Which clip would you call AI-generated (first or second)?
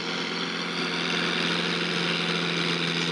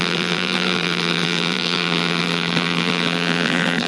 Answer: second